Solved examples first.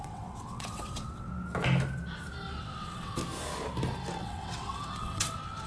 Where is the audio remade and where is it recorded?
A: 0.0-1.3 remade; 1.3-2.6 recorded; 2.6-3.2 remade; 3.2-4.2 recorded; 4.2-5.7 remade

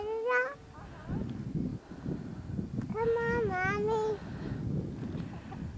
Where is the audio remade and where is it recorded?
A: 0.0-5.8 recorded